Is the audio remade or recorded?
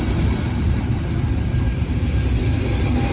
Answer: recorded